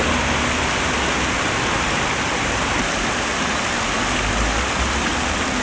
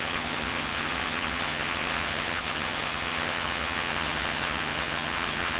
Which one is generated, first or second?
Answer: second